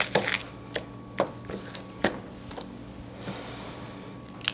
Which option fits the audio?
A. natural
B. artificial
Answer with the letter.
A